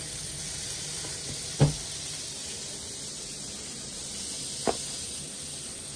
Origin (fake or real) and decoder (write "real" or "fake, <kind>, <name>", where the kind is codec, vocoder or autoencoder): real